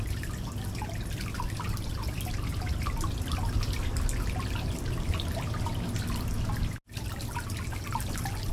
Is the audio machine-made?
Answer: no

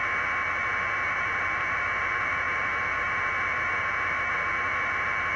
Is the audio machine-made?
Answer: yes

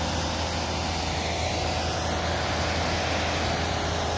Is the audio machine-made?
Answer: no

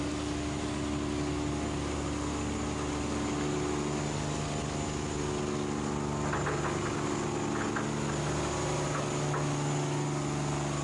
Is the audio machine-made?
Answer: no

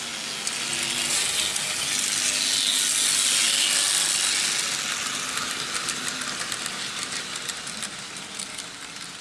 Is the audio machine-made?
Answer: no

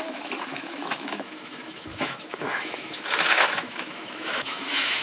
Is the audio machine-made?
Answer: yes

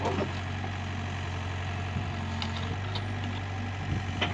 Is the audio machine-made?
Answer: no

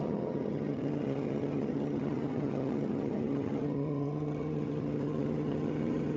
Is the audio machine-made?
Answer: yes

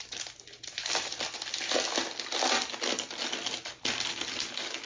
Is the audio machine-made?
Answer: no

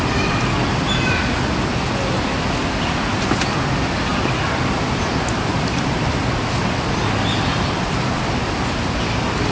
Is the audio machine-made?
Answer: no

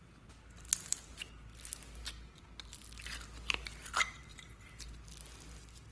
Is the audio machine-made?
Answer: no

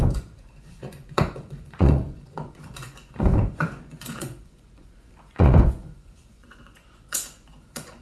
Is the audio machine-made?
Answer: yes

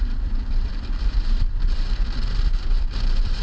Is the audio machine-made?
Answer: yes